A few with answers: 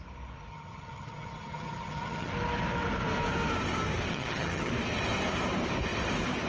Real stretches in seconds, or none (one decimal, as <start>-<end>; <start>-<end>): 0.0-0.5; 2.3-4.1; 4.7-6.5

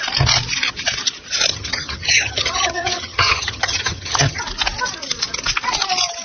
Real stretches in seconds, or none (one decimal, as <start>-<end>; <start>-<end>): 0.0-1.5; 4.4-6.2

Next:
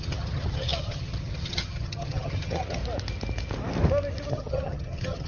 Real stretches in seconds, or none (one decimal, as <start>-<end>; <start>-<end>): 2.8-4.3

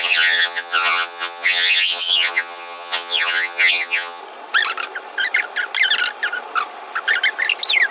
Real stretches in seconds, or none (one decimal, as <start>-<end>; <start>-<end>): 4.2-7.9

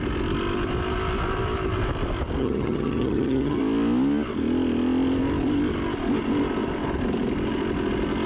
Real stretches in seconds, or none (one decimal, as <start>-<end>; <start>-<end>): 0.0-2.4; 3.6-8.3

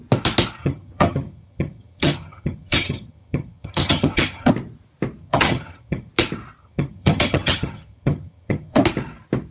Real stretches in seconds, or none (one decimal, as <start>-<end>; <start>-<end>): 0.0-0.6; 4.5-5.2; 6.1-6.6; 8.8-9.5

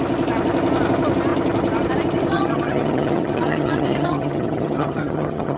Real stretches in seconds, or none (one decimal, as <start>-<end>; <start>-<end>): 0.0-2.3

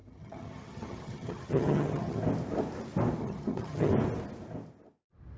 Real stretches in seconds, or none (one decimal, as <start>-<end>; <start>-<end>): 2.2-3.2; 3.9-5.4